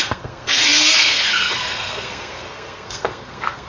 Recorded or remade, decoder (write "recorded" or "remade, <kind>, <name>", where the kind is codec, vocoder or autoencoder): remade, codec, SNAC